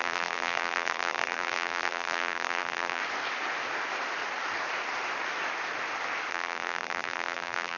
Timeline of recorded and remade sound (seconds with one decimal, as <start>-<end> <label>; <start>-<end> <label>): 0.0-3.0 remade; 3.0-6.3 recorded; 6.3-7.8 remade